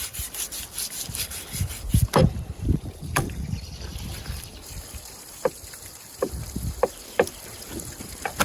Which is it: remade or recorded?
remade